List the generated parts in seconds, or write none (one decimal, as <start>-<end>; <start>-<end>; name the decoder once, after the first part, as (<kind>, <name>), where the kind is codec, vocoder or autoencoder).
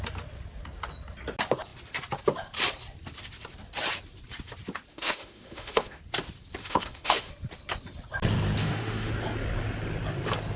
4.9-6.0 (autoencoder, DAC-VAE); 6.6-7.3; 8.6-9.1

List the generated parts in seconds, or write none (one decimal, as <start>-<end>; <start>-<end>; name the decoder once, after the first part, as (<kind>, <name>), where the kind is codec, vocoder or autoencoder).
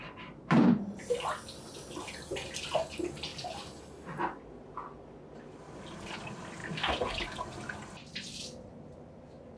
none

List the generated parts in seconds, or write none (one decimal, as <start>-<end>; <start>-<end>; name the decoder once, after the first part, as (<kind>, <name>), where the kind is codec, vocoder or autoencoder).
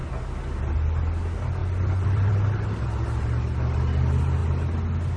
1.6-2.3 (vocoder, BigVGAN v2)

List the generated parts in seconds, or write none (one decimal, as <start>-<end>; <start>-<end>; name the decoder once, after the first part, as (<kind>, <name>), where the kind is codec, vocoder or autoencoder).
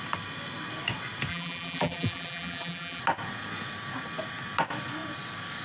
1.3-3.0 (vocoder, BigVGAN v2)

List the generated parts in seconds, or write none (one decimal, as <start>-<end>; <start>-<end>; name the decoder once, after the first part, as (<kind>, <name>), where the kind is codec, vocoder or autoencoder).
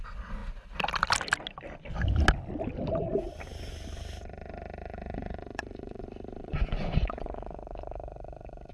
4.8-6.0 (vocoder, Vocos); 6.4-8.7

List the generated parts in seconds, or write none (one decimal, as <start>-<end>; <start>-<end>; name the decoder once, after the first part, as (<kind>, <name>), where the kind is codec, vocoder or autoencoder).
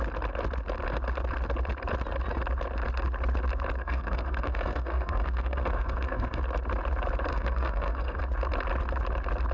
3.8-6.4 (codec, SNAC); 7.3-8.2